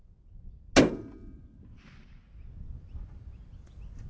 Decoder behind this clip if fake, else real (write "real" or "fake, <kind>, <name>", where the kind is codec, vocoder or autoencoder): real